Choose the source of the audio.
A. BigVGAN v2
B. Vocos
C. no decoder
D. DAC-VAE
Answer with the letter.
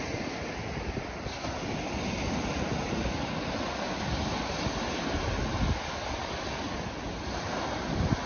C